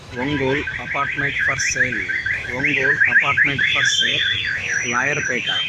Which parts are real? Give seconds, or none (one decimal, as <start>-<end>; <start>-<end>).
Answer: 0.7-1.4